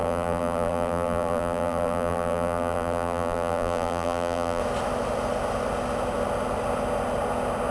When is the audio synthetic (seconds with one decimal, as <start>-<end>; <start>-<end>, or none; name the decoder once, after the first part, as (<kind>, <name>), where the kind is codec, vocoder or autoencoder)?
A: 0.0-4.6 (vocoder, BigVGAN v2)